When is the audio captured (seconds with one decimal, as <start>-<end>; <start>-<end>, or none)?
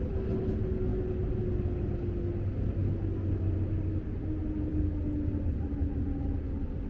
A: 0.0-6.9